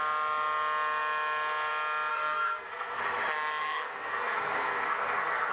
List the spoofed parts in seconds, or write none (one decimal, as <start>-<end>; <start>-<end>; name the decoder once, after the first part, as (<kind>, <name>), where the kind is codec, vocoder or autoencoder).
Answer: 2.1-3.0 (codec, SNAC); 3.6-5.5